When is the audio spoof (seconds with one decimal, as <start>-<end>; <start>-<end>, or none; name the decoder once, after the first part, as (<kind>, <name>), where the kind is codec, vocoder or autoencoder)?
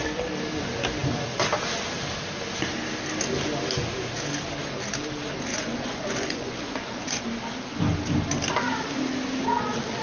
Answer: 5.5-7.2 (vocoder, Vocos)